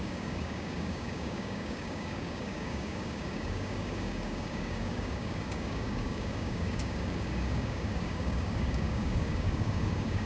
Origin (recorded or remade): remade